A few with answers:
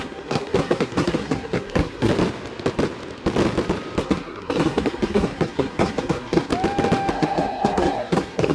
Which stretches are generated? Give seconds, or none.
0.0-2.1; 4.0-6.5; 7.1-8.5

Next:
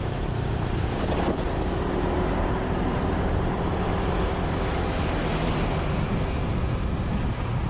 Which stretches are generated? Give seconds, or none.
0.0-4.1

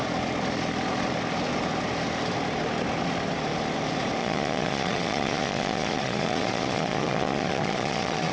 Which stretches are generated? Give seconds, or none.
4.2-8.3

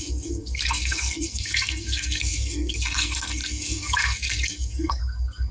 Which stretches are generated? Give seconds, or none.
0.0-5.5

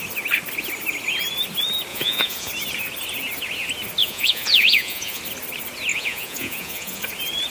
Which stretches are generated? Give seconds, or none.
1.9-2.5; 4.0-5.2; 5.9-7.0

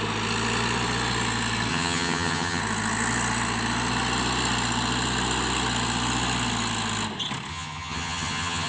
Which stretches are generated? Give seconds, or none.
1.7-2.6; 7.5-8.7